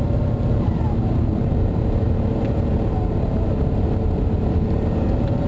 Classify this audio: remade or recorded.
remade